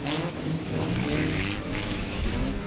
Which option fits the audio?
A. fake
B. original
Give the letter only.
A